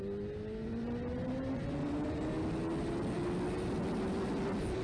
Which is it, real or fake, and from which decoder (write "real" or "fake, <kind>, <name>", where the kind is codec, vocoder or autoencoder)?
real